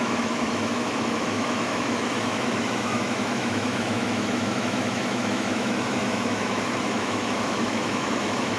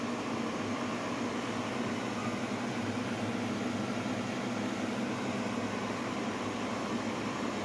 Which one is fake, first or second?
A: first